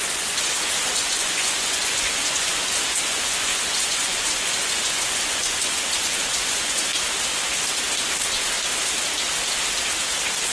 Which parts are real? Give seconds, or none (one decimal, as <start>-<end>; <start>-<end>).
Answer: 6.9-10.5